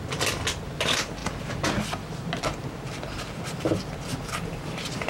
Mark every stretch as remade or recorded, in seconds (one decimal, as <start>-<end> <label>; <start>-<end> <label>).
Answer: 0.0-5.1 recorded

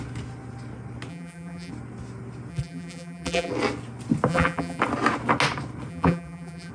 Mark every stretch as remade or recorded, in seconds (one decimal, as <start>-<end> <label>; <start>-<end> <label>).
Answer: 0.0-1.1 recorded; 1.1-1.7 remade; 1.7-2.5 recorded; 2.5-3.5 remade; 3.5-4.3 recorded; 4.3-4.8 remade; 4.8-5.9 recorded; 5.9-6.7 remade

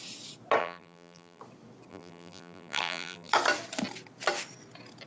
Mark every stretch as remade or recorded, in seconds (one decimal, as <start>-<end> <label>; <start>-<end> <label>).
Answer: 0.0-0.6 recorded; 0.6-1.4 remade; 1.4-1.9 recorded; 1.9-3.3 remade; 3.3-5.1 recorded

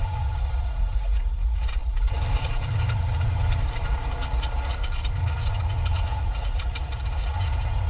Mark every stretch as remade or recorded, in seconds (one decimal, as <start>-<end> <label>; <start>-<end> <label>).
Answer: 0.0-7.9 remade